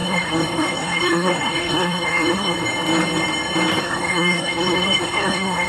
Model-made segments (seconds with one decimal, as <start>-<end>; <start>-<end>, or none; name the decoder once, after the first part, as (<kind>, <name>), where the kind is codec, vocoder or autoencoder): 0.0-2.7 (codec, SNAC); 3.8-5.7